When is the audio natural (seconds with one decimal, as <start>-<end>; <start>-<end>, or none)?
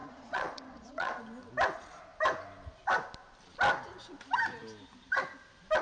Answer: 1.2-5.8